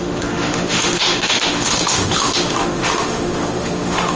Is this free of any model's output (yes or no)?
no